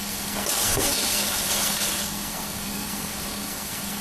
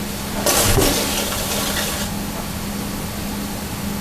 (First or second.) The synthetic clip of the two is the first